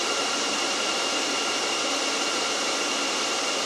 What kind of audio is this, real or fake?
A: fake